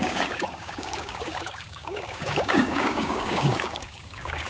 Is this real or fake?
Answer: fake